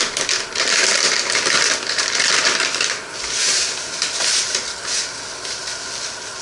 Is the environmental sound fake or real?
real